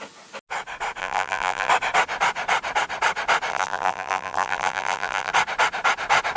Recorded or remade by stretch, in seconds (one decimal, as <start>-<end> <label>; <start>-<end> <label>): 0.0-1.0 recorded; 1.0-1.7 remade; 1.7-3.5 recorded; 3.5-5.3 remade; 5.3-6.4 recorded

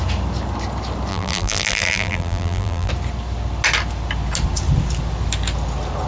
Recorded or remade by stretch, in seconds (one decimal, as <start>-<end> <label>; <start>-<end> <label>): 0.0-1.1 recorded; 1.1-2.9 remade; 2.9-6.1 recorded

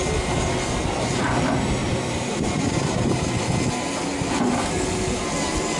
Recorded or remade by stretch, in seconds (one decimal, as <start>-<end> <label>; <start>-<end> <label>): 0.0-1.8 recorded; 1.8-3.3 remade; 3.3-5.8 recorded

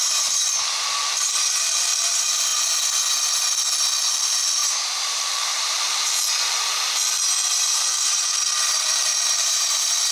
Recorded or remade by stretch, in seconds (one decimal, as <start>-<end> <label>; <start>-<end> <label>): 0.0-2.5 remade; 2.5-4.1 recorded; 4.1-6.7 remade; 6.7-7.7 recorded; 7.7-10.1 remade